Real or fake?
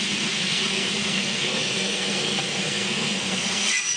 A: fake